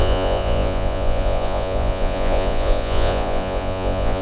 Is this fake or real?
fake